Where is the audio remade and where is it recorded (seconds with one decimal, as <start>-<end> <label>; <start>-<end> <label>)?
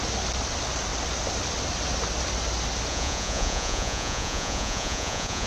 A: 0.0-2.9 recorded; 2.9-5.5 remade